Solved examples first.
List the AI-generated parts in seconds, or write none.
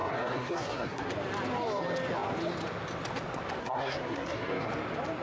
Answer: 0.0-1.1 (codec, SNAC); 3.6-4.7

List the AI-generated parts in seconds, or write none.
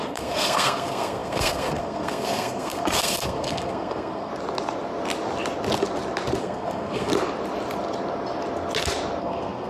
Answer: 0.0-4.3 (codec, SNAC); 6.4-7.1; 9.2-9.7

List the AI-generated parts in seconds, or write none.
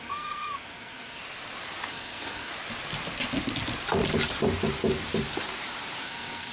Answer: 0.0-1.2 (codec, SNAC); 1.9-2.5; 6.0-6.5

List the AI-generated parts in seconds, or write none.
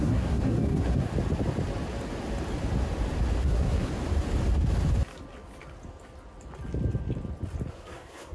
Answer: 0.0-1.1 (codec, SNAC); 3.4-3.9; 7.7-8.3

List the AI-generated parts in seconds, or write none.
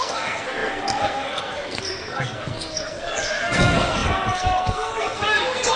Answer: 0.0-5.8 (codec, SNAC)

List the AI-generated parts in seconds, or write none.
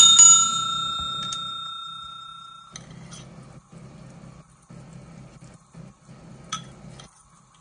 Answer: none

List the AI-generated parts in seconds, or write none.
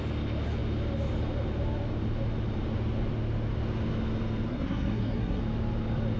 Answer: 4.5-5.4 (codec, SNAC)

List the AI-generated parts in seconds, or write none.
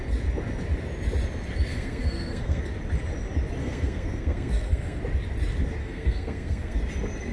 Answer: 1.7-2.6 (codec, SNAC); 3.6-5.0; 5.8-6.8